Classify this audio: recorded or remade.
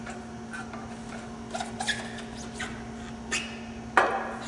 recorded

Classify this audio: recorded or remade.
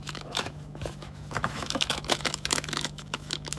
remade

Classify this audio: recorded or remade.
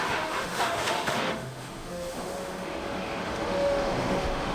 remade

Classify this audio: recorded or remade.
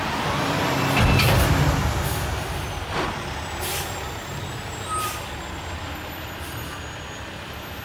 recorded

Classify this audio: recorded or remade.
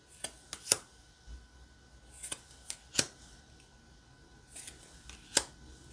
recorded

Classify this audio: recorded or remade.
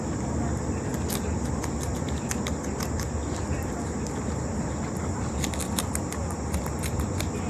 recorded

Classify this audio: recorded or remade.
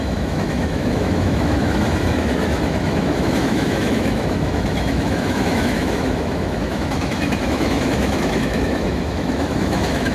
remade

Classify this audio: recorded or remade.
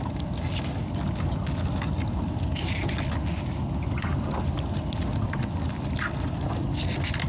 recorded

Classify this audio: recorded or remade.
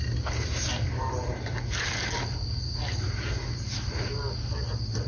recorded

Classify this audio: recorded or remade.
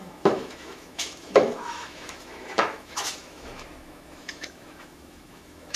remade